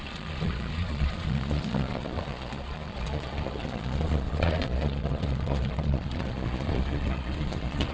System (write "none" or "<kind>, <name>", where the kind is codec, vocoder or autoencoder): vocoder, Vocos